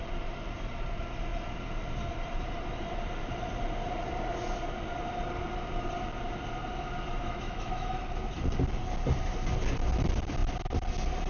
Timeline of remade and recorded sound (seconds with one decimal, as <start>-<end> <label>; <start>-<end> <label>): 0.0-7.1 recorded; 7.1-8.0 remade; 8.0-11.3 recorded